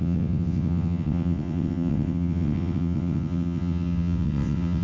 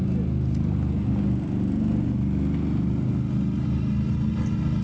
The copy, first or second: first